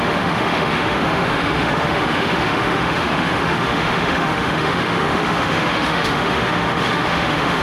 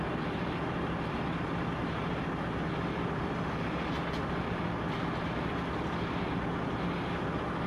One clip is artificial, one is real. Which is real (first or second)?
second